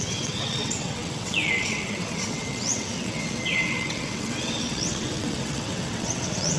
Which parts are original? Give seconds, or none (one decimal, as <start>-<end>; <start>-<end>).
none